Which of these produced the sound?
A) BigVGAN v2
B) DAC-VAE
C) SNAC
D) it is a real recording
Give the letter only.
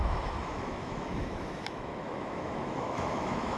B